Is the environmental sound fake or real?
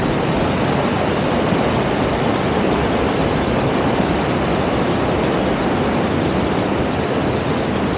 real